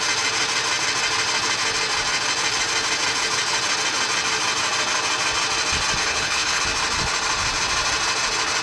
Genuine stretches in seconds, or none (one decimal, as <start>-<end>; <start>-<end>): 0.0-6.0; 6.6-8.6